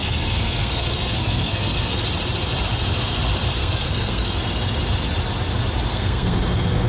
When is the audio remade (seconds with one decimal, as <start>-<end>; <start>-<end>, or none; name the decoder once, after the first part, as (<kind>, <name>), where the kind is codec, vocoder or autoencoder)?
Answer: 0.0-2.0 (codec, SNAC); 3.6-4.4; 5.9-6.9